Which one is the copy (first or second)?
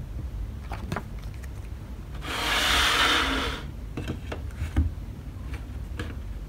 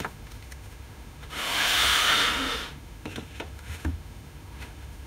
second